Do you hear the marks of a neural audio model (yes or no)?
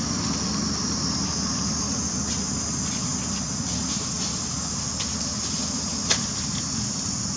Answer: no